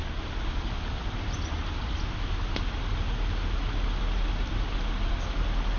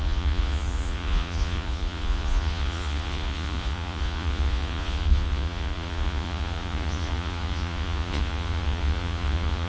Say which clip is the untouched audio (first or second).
first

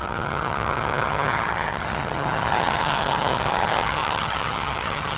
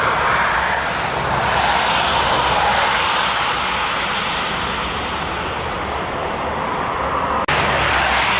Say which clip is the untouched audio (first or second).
second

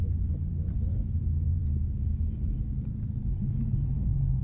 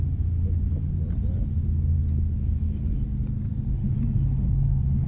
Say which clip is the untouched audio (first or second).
second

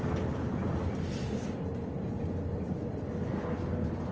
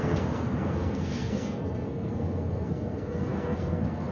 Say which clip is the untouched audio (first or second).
first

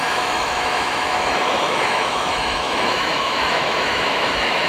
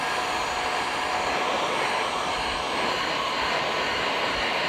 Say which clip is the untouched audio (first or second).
second